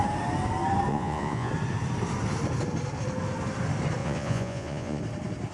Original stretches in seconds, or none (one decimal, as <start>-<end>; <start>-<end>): 0.0-0.9; 1.5-4.0; 5.0-5.5

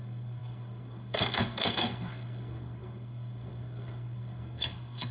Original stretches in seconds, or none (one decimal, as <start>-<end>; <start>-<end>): none

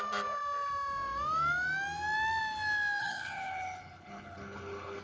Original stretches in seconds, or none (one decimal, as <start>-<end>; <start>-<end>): 0.0-3.0

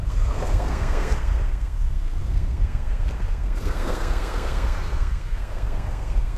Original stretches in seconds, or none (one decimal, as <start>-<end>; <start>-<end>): none

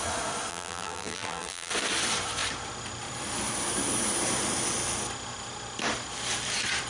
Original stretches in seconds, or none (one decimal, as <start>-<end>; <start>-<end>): 0.0-0.5; 1.7-6.9

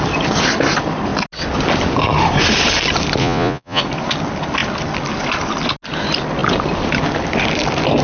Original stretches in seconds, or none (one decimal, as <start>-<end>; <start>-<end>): 0.0-3.2; 3.8-8.0